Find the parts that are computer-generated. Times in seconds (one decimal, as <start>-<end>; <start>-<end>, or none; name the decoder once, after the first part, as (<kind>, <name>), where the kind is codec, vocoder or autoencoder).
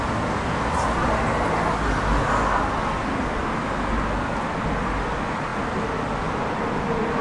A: none